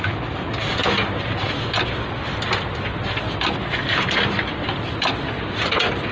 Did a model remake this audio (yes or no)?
no